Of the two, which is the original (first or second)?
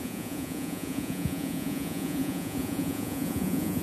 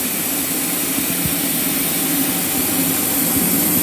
second